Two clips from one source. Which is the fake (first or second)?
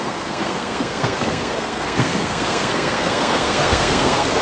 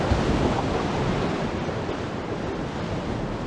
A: first